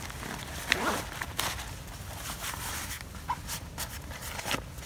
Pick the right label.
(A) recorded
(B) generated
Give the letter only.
A